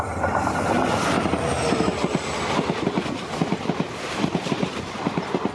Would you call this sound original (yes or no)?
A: yes